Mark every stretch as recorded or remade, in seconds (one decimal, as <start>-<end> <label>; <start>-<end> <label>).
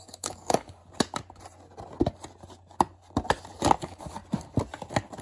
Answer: 0.0-0.8 remade; 0.8-3.8 recorded; 3.8-4.2 remade; 4.2-5.2 recorded